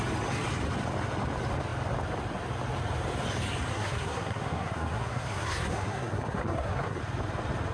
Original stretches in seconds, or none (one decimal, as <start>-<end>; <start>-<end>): 0.0-3.7; 7.0-7.7